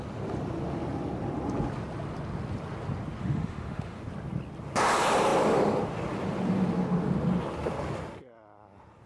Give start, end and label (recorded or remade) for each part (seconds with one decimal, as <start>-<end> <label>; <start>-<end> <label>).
0.0-3.2 recorded; 3.2-4.0 remade; 4.0-9.1 recorded